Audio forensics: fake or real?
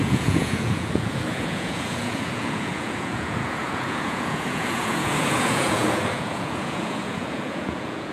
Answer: fake